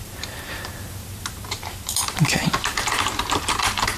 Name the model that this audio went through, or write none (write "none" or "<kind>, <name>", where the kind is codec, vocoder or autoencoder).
vocoder, BigVGAN v2